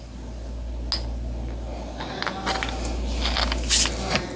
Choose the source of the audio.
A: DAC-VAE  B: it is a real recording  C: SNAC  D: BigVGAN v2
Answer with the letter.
B